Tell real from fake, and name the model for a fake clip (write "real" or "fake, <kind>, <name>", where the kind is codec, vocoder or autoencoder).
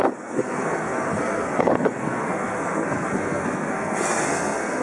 fake, codec, SNAC